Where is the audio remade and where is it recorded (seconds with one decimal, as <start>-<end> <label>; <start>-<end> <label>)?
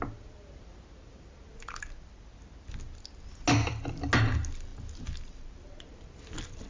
0.0-6.7 recorded